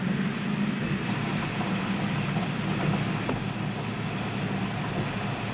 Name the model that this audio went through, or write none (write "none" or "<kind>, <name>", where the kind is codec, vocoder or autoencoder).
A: none